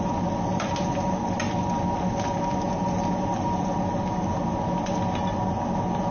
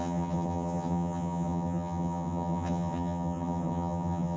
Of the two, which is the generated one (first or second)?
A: second